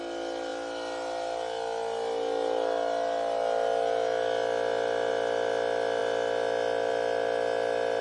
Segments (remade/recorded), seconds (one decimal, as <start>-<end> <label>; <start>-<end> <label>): 0.0-8.0 recorded

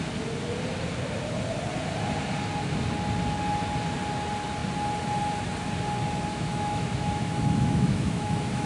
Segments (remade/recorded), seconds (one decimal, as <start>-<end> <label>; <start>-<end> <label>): 0.0-6.3 recorded; 6.3-8.7 remade

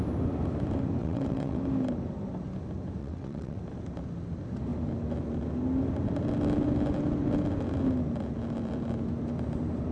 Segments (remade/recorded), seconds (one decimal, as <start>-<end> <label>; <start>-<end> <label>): 0.0-1.0 recorded; 1.0-1.6 remade; 1.6-3.0 recorded; 3.0-3.6 remade; 3.6-9.9 recorded